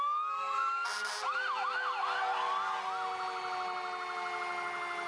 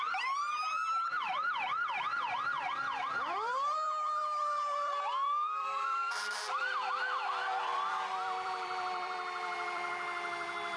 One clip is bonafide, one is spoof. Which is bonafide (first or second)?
first